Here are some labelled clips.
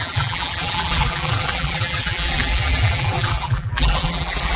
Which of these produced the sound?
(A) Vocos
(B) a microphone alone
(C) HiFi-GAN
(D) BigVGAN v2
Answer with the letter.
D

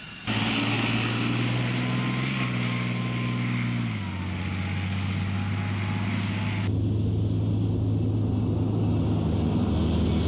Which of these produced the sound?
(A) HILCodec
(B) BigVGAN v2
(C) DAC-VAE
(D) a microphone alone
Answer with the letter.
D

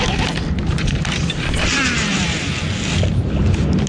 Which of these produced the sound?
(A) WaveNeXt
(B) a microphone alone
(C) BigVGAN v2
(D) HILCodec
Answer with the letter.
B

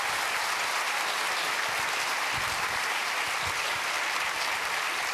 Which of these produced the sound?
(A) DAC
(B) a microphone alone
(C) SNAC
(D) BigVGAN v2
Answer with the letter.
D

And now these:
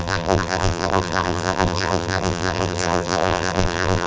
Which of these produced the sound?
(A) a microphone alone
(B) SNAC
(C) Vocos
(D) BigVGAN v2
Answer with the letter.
D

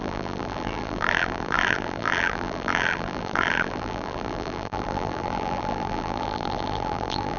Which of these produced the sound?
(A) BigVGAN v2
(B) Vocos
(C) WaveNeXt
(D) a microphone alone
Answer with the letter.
A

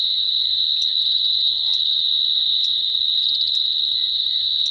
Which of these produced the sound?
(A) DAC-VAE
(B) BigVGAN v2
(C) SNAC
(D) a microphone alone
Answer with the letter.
D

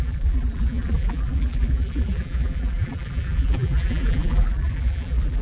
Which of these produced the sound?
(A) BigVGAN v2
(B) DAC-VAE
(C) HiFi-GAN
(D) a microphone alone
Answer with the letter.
A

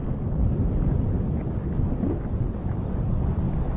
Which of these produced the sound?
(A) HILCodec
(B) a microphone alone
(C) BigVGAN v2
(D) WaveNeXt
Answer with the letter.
C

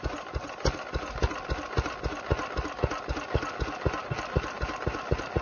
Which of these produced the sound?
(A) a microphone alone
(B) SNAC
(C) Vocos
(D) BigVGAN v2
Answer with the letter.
A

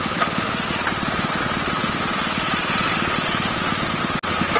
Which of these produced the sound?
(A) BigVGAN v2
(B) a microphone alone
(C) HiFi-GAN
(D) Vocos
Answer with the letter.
B